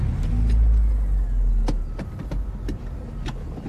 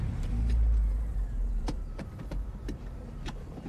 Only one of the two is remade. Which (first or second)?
second